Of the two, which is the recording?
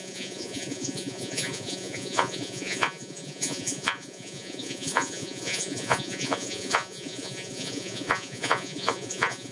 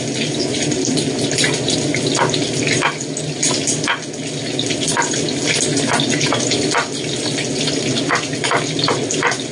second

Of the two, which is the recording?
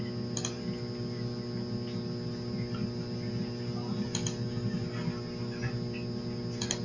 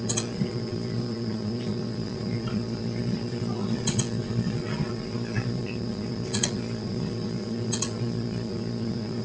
first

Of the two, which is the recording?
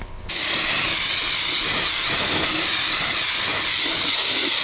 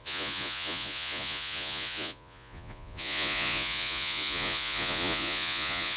first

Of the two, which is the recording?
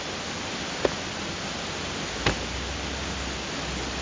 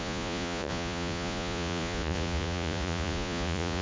first